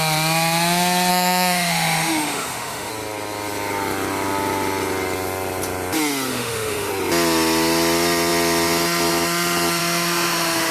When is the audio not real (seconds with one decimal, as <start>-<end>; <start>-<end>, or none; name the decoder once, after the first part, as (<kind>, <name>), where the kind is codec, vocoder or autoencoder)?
1.1-2.9 (autoencoder, DAC-VAE); 6.3-6.9; 9.8-10.7